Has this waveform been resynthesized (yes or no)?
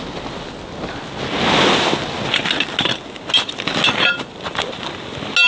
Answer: no